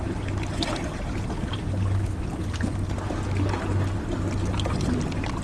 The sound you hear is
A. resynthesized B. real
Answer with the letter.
B